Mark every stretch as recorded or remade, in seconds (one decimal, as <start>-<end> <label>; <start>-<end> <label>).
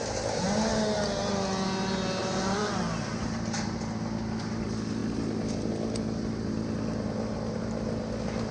0.0-2.2 recorded; 2.2-3.8 remade; 3.8-8.5 recorded